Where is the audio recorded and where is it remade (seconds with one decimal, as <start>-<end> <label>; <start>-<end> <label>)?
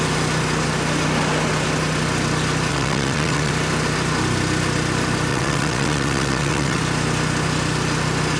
0.0-2.7 recorded; 2.7-3.5 remade; 3.5-5.3 recorded; 5.3-6.8 remade; 6.8-8.4 recorded